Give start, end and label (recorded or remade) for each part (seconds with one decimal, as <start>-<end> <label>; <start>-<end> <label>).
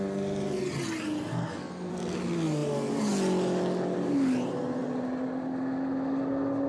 0.0-1.3 recorded; 1.3-1.9 remade; 1.9-6.7 recorded